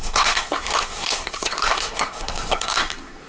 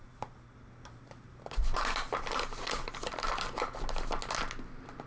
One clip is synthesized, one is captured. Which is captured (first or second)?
second